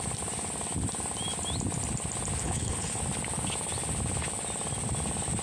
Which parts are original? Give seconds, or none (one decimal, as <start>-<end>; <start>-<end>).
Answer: 0.0-2.4; 3.0-5.4